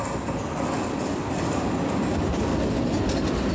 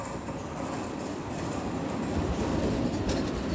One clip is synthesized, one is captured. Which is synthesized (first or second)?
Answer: second